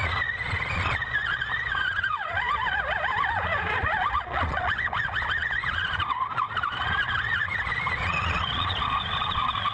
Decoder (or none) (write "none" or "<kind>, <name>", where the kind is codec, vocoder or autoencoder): vocoder, Vocos